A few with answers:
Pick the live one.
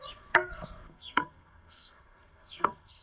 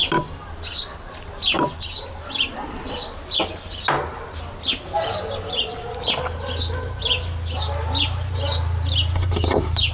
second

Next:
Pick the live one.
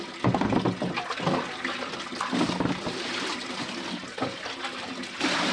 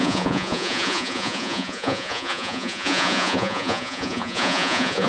first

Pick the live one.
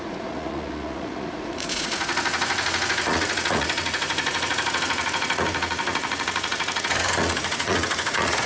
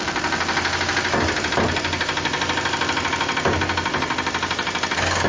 second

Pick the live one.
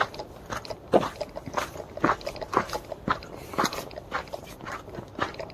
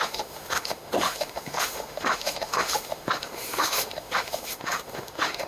first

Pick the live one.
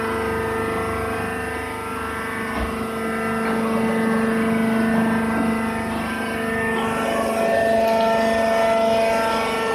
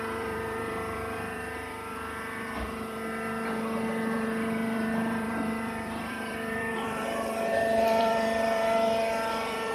first